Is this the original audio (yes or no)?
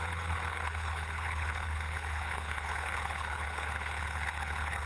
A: no